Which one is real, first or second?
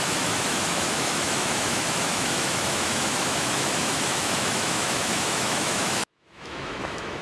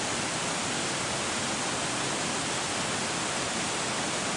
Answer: second